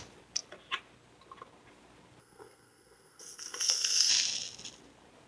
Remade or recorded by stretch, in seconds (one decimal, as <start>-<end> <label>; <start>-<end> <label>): 0.0-2.2 recorded; 2.2-4.1 remade; 4.1-5.3 recorded